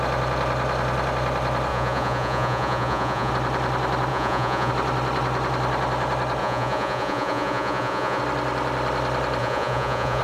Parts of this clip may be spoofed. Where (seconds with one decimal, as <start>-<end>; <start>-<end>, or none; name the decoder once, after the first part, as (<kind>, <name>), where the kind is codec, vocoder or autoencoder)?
1.7-3.3 (vocoder, Vocos); 4.1-4.7; 6.4-8.2; 9.4-10.2